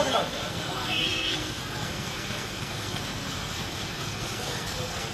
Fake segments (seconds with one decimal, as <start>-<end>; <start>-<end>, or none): 0.0-5.1